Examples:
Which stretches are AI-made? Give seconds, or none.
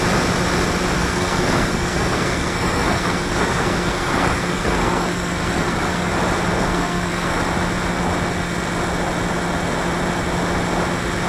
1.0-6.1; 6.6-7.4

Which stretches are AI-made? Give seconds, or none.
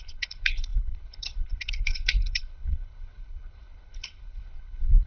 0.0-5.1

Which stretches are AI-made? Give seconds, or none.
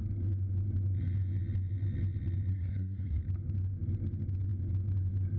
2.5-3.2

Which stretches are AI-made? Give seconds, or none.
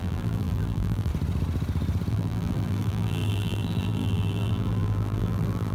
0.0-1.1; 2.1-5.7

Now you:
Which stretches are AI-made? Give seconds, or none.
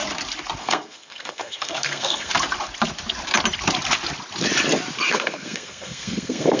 0.6-2.3; 5.1-6.6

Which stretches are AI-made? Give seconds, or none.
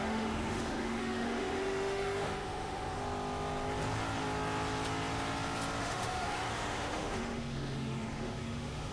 0.0-3.0; 5.8-8.9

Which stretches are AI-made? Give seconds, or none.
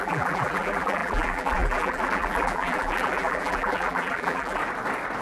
0.0-4.6